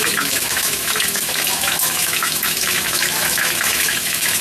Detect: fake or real fake